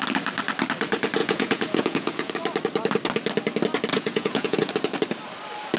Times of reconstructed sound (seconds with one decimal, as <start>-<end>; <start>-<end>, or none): 1.2-2.3; 3.9-4.7